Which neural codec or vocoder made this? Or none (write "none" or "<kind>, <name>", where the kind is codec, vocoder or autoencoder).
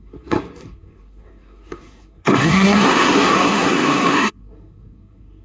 codec, SNAC